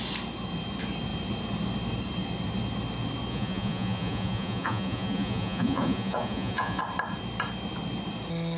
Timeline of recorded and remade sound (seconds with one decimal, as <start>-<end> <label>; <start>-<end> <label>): 0.0-3.3 recorded; 3.3-6.8 remade; 6.8-8.6 recorded